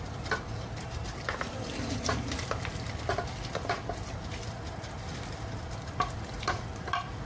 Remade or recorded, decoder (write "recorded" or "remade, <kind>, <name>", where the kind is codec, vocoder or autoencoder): remade, vocoder, BigVGAN v2